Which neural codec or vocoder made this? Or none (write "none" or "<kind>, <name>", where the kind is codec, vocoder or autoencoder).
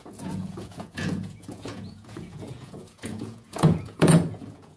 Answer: vocoder, Vocos